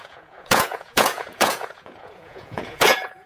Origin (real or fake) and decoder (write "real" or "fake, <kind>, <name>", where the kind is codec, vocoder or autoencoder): fake, vocoder, Vocos